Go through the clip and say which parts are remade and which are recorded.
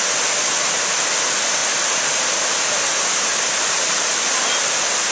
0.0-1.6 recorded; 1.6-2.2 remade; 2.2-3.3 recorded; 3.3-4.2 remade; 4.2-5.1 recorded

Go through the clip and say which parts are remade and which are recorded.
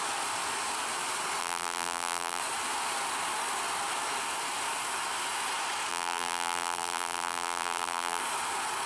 0.0-1.4 recorded; 1.4-2.4 remade; 2.4-5.9 recorded; 5.9-8.2 remade; 8.2-8.9 recorded